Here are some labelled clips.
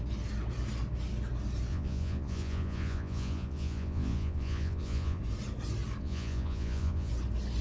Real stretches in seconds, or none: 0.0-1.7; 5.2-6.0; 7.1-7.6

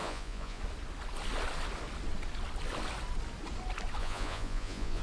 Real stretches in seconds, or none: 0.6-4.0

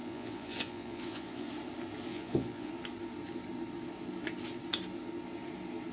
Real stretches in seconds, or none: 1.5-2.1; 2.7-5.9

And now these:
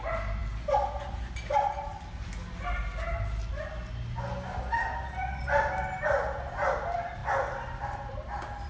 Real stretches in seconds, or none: 0.0-8.7

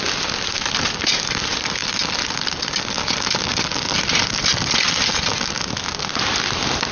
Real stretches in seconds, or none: 0.0-6.9

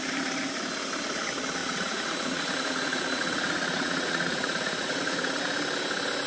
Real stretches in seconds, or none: 0.0-1.6; 5.4-6.3

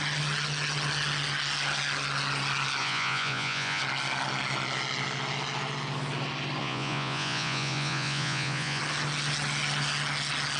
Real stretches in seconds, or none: 0.0-2.8; 3.8-6.6; 8.8-10.6

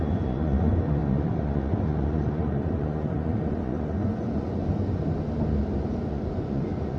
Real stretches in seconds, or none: 4.6-6.1